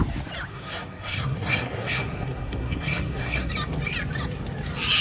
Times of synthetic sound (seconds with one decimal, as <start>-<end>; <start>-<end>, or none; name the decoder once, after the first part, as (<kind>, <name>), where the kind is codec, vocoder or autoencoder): 0.5-3.5 (codec, SNAC)